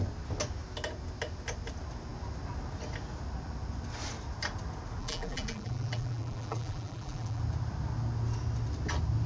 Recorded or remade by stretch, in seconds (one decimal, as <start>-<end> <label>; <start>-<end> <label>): 0.0-5.0 recorded; 5.0-7.4 remade; 7.4-9.3 recorded